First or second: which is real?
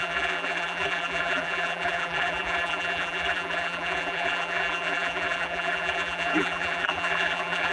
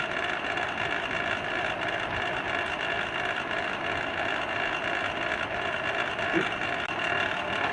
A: second